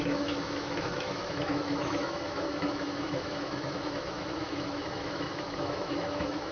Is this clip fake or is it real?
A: fake